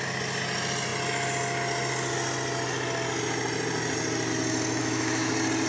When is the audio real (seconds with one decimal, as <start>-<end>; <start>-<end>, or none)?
0.0-4.8; 5.3-5.7